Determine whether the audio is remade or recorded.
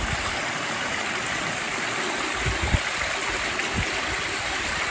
recorded